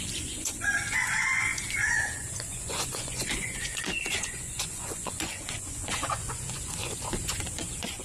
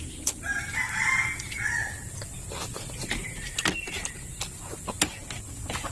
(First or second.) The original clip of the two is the second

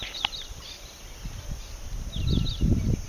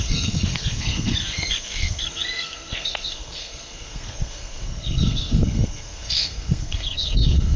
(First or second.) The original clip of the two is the first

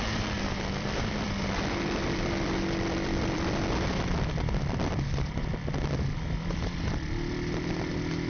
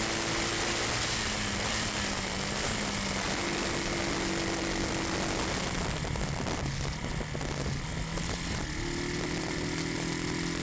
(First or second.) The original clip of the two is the second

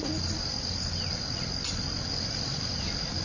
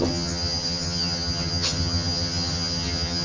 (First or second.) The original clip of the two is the first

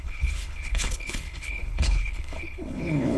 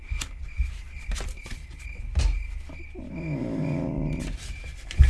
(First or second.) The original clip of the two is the second